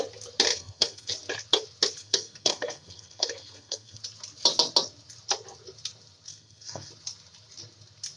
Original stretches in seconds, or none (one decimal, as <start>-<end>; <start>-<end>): 0.0-0.5; 1.1-2.0; 4.0-6.3; 6.9-8.2